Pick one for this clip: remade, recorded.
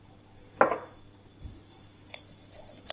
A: recorded